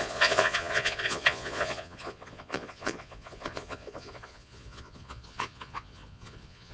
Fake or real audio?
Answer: fake